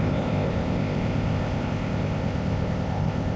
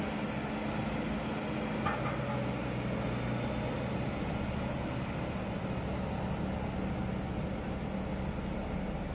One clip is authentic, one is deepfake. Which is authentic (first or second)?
second